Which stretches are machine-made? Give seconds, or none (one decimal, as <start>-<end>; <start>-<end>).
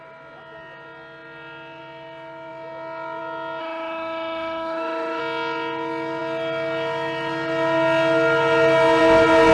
3.6-5.2